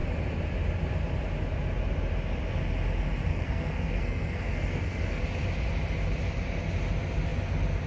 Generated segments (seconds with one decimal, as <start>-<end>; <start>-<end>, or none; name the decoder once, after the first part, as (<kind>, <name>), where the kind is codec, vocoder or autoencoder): 3.3-5.2 (codec, SNAC)